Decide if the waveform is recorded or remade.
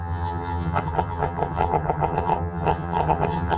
remade